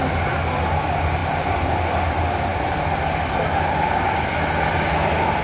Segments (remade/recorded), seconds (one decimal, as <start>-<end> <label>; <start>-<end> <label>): 0.0-5.4 recorded